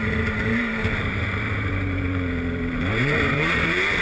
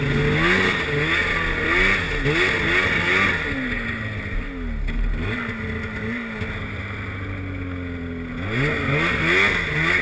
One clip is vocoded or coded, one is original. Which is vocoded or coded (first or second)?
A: first